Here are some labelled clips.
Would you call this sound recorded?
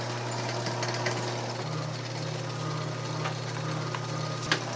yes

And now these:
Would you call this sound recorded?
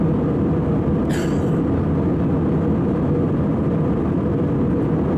yes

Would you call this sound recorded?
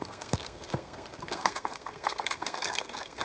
no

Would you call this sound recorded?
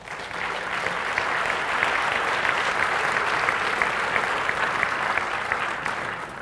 yes